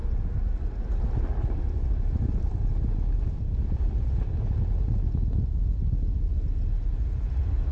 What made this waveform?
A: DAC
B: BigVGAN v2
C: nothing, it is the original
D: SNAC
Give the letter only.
C